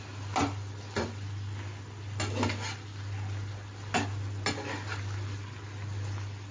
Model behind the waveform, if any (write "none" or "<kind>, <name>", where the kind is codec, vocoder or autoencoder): none